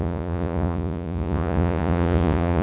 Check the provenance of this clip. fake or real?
fake